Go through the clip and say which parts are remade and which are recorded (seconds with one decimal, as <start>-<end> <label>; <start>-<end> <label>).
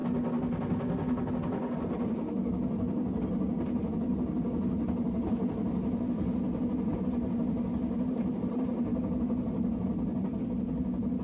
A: 0.0-11.2 recorded